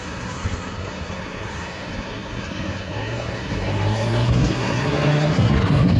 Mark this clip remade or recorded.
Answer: remade